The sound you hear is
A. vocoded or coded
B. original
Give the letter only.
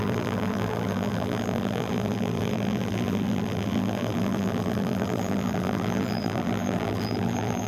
A